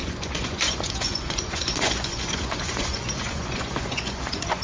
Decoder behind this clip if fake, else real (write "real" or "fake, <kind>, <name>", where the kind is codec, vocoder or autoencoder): fake, vocoder, Vocos